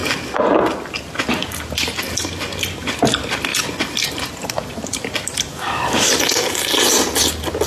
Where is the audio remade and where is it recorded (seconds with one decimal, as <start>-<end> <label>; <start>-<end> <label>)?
0.0-5.5 recorded; 5.5-6.1 remade; 6.1-7.7 recorded